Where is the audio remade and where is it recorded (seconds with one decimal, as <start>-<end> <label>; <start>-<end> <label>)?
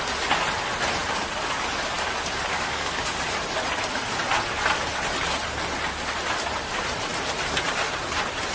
0.0-2.5 recorded; 2.5-3.0 remade; 3.0-8.5 recorded